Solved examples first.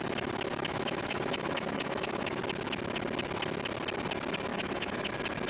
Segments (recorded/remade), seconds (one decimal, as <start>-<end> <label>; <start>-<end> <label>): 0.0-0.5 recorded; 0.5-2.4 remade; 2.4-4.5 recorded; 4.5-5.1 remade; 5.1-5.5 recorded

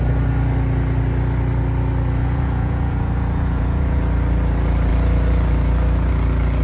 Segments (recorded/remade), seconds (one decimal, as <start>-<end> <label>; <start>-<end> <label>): 0.0-2.2 recorded; 2.2-4.0 remade; 4.0-6.6 recorded

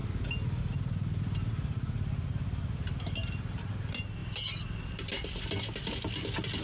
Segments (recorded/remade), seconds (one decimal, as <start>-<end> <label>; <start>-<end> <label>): 0.0-6.6 recorded

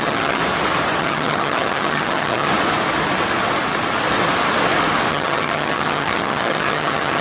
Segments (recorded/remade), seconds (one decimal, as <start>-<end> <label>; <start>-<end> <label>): 0.0-0.4 remade; 0.4-1.0 recorded; 1.0-2.5 remade; 2.5-5.1 recorded; 5.1-7.2 remade

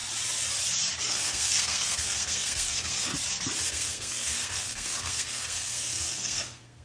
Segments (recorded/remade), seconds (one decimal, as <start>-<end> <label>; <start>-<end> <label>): 0.0-1.0 recorded; 1.0-3.1 remade; 3.1-3.7 recorded; 3.7-6.8 remade

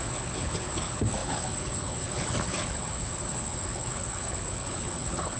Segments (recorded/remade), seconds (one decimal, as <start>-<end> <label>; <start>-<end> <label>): 0.0-5.4 remade

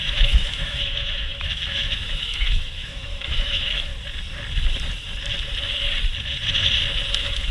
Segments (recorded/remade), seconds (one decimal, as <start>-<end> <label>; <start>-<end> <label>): 0.0-3.9 remade; 3.9-7.1 recorded; 7.1-7.5 remade